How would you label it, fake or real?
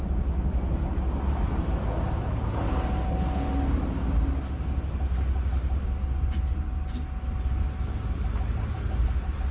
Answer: real